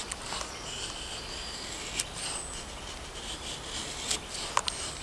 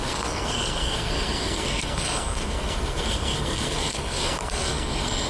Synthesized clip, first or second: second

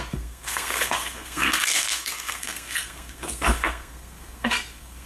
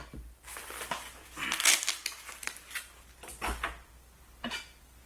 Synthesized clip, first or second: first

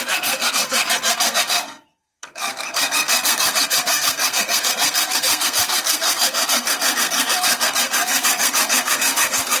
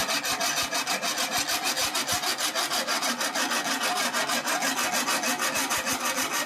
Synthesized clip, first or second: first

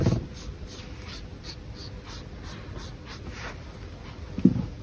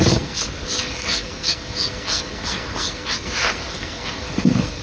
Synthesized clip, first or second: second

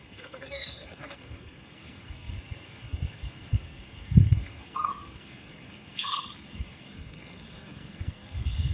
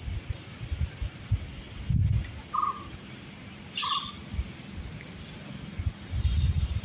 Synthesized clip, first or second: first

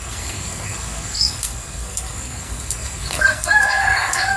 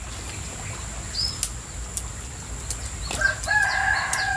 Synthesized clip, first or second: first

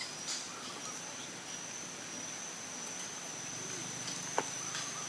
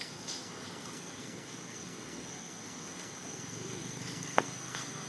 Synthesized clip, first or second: second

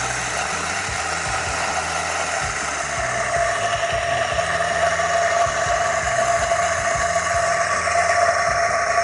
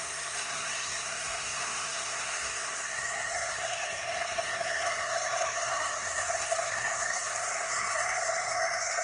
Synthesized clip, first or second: second